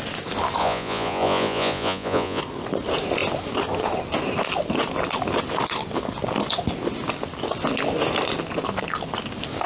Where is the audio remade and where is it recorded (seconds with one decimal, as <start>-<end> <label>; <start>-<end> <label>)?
0.0-0.6 recorded; 0.6-2.4 remade; 2.4-9.7 recorded